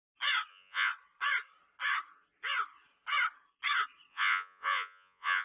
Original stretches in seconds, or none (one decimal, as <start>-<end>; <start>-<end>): 0.0-0.5; 0.9-4.1

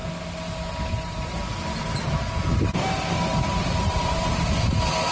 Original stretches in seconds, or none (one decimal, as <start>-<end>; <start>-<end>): 0.0-3.3; 4.3-5.1